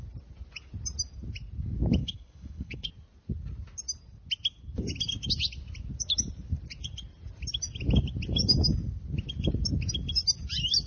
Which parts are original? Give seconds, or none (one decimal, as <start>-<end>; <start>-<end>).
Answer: 0.0-2.0; 2.9-10.9